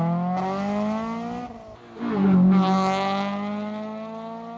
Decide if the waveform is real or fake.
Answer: real